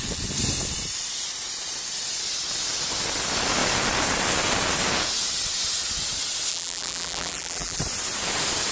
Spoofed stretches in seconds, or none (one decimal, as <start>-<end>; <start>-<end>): 6.5-7.8